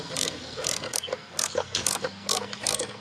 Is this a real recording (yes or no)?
no